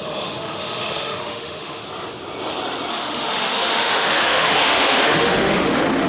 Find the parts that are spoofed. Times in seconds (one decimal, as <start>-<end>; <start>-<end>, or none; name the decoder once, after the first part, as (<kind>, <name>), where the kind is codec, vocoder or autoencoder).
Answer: 0.0-1.8 (autoencoder, DAC-VAE); 2.9-6.1